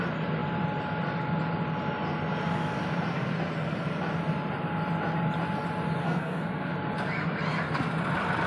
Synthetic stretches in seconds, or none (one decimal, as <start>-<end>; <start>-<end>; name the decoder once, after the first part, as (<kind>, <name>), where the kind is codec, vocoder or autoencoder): 6.0-6.7 (codec, SNAC)